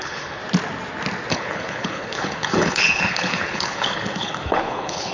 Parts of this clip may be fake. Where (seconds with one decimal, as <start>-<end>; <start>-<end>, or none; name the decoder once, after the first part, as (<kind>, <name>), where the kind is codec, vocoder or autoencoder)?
0.0-0.4 (codec, HILCodec); 1.3-5.1